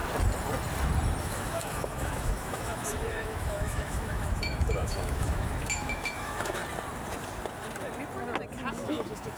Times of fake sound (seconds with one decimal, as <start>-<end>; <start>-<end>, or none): 1.2-6.6; 8.7-9.4